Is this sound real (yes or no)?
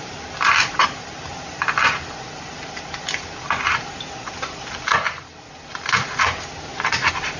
yes